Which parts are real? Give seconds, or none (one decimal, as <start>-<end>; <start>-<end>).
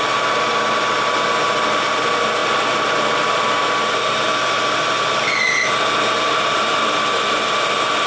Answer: 0.0-8.1